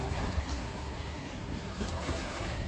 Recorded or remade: remade